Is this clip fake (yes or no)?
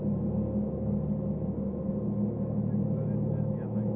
no